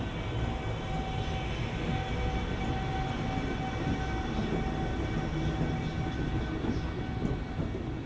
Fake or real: real